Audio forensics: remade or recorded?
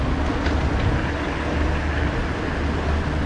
recorded